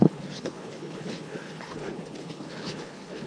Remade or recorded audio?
remade